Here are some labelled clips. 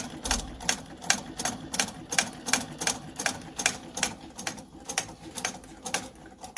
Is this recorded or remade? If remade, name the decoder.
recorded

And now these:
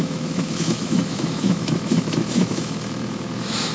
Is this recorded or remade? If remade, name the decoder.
remade, autoencoder, DAC-VAE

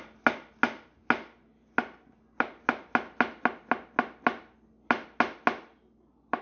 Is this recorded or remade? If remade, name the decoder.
recorded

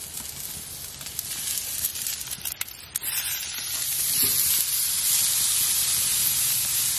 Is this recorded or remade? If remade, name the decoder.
recorded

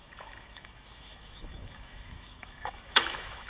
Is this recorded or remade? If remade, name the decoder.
remade, autoencoder, DAC-VAE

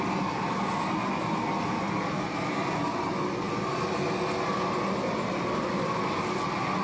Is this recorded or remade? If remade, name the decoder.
recorded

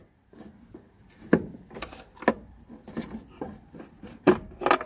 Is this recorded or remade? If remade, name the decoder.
recorded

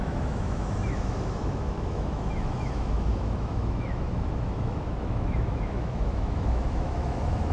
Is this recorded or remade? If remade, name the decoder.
remade, autoencoder, DAC-VAE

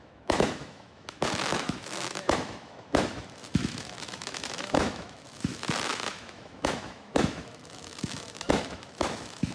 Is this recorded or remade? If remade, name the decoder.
remade, autoencoder, DAC-VAE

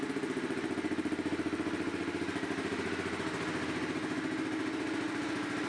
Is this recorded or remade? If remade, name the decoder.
recorded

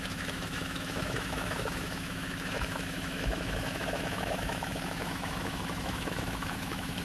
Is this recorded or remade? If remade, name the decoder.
remade, autoencoder, DAC-VAE